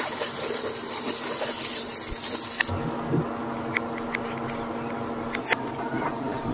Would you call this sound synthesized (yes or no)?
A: no